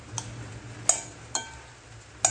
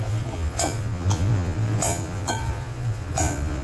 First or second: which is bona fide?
first